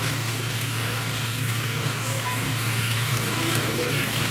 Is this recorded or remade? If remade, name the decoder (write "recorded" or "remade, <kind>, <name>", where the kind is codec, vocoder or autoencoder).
remade, codec, DAC